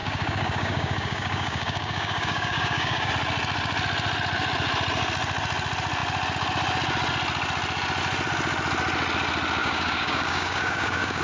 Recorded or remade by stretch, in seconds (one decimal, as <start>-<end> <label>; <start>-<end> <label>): 0.0-3.1 remade; 3.1-9.6 recorded; 9.6-11.2 remade